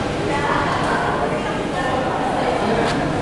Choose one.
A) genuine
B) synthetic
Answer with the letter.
A